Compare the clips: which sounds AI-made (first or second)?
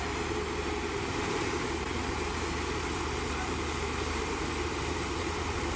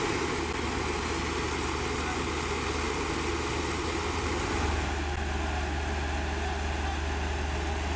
first